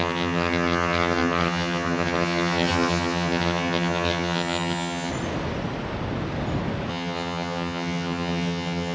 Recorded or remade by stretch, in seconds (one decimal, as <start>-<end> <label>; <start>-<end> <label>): 0.0-5.1 remade; 5.1-6.9 recorded; 6.9-8.9 remade

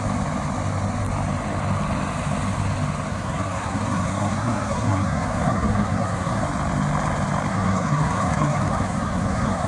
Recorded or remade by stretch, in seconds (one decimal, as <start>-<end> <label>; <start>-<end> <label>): 0.0-3.1 recorded; 3.1-6.4 remade; 6.4-7.5 recorded; 7.5-9.7 remade

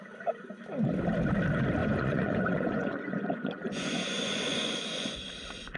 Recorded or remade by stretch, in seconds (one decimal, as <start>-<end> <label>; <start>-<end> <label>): 0.0-1.8 recorded; 1.8-5.3 remade; 5.3-5.8 recorded

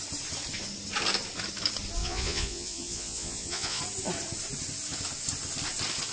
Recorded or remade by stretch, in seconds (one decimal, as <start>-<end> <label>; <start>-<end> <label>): 0.0-2.0 recorded; 2.0-3.8 remade; 3.8-6.1 recorded

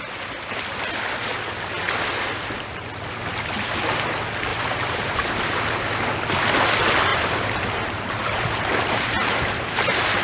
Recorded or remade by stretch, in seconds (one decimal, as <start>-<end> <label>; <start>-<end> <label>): 0.0-4.5 recorded; 4.5-5.3 remade; 5.3-7.1 recorded; 7.1-10.2 remade